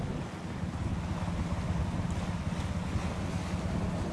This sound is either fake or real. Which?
real